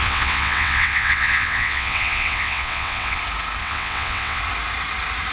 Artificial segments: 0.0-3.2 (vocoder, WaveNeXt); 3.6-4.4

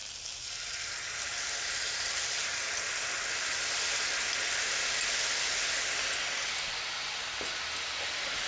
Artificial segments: none

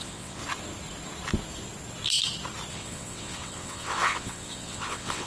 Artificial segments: 0.0-0.4 (vocoder, WaveNeXt); 2.7-5.3